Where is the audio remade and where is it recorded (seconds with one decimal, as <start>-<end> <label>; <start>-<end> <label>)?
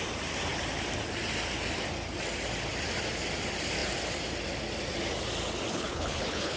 0.0-5.7 recorded; 5.7-6.6 remade